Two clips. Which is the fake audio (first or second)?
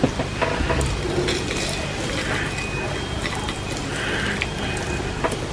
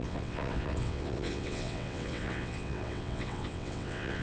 second